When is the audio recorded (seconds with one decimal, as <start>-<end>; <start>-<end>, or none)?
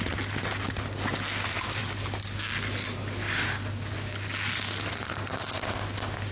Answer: 0.0-6.3